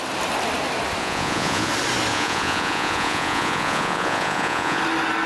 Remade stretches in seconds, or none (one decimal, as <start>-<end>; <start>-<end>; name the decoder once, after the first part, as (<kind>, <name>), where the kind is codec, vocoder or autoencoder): 1.0-1.7 (vocoder, Vocos); 2.1-4.8